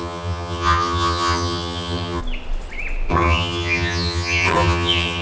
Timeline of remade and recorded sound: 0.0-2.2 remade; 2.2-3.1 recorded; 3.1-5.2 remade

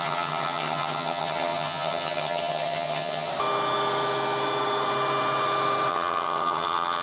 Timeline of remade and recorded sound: 0.0-3.3 remade; 3.3-5.9 recorded; 5.9-7.0 remade

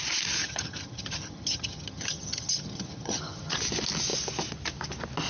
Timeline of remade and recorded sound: 0.0-0.4 recorded; 0.4-3.6 remade; 3.6-5.3 recorded

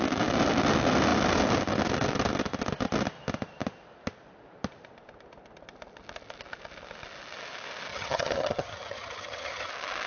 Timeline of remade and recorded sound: 0.0-7.9 recorded; 7.9-9.7 remade; 9.7-10.1 recorded

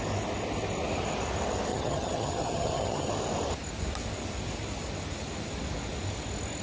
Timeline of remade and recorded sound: 0.0-1.7 recorded; 1.7-3.1 remade; 3.1-6.6 recorded

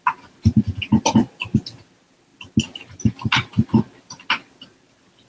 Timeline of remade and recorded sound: 0.0-5.3 recorded

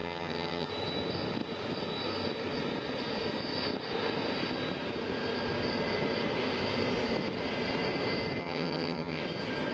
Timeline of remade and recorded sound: 0.0-0.7 remade; 0.7-8.4 recorded; 8.4-9.2 remade; 9.2-9.7 recorded

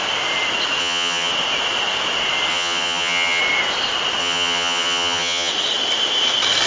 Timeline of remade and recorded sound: 0.0-0.8 recorded; 0.8-1.3 remade; 1.3-2.5 recorded; 2.5-3.4 remade; 3.4-4.2 recorded; 4.2-5.5 remade; 5.5-6.7 recorded